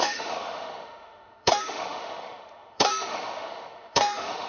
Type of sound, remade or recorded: remade